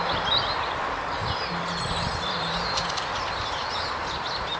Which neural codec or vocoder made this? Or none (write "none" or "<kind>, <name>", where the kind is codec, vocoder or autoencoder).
none